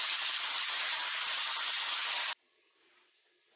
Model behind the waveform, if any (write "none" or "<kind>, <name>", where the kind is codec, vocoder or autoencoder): none